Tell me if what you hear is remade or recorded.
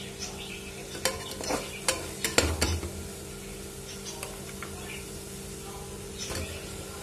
recorded